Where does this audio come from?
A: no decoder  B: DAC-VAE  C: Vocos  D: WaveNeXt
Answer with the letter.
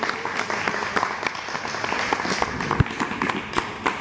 A